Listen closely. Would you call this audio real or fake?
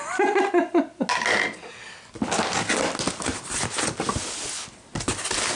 real